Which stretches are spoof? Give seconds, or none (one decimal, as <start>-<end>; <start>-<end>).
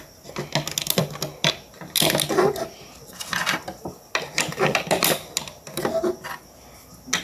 none